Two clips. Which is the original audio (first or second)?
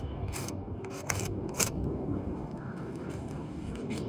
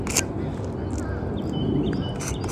second